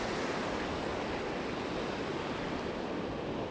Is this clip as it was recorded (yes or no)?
yes